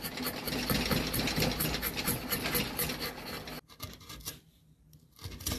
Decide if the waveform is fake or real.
real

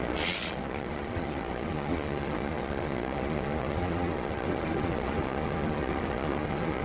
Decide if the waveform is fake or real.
fake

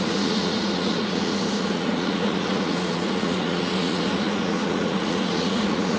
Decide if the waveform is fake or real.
fake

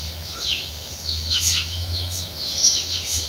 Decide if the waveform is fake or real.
fake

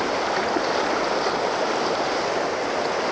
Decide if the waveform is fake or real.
real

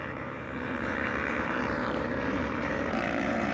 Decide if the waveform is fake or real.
fake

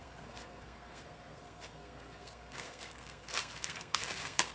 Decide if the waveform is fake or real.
fake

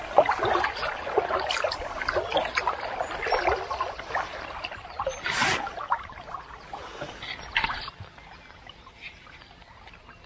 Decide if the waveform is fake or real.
real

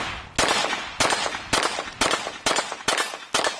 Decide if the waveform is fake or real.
real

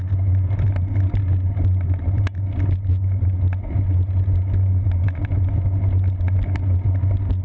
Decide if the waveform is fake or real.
real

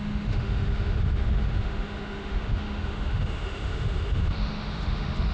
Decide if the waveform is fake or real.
fake